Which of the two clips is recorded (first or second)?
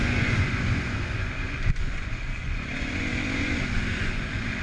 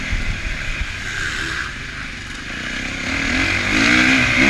second